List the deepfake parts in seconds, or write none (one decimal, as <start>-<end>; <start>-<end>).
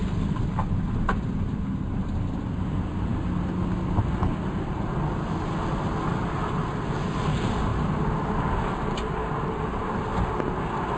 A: none